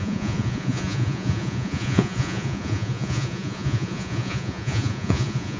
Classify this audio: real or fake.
fake